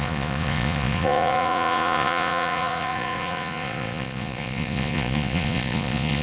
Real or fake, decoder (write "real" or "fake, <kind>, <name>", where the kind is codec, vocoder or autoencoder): fake, vocoder, Vocos